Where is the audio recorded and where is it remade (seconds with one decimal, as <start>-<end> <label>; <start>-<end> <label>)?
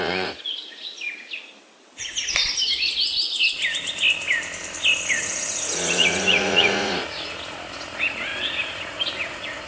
0.0-0.9 remade; 0.9-5.1 recorded; 5.1-9.7 remade